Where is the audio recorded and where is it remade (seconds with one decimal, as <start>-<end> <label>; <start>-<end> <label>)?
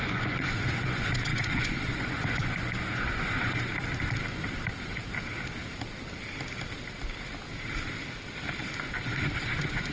0.0-3.7 remade; 3.7-8.9 recorded; 8.9-9.9 remade